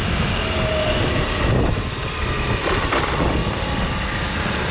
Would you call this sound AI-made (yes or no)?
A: no